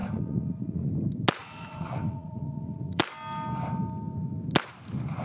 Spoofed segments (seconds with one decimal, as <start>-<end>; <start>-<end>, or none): 0.0-0.9; 1.4-3.0